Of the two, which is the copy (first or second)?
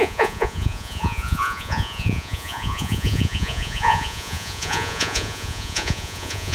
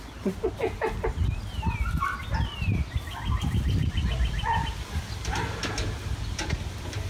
first